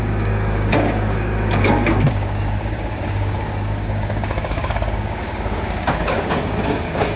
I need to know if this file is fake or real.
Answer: fake